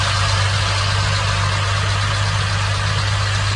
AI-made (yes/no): no